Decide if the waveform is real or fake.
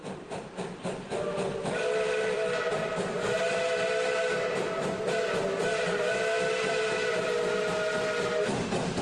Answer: fake